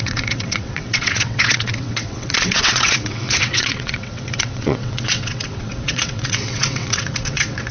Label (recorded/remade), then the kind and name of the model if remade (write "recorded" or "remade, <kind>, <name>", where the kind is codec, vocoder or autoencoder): remade, vocoder, WaveNeXt